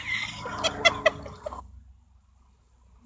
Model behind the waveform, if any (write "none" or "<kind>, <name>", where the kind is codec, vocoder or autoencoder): none